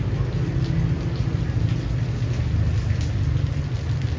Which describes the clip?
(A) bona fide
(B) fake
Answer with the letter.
A